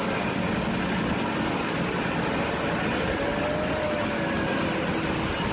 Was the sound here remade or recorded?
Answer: recorded